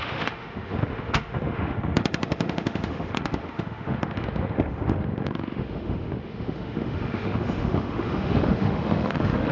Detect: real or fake fake